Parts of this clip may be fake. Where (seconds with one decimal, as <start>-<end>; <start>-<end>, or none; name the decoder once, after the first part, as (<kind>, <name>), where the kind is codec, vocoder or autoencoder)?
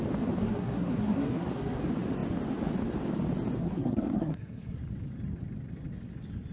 0.4-1.8 (codec, SNAC); 3.6-4.8